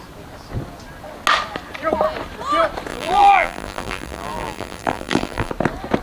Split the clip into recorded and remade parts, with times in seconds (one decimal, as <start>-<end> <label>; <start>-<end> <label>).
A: 0.0-2.9 recorded; 2.9-5.5 remade; 5.5-6.0 recorded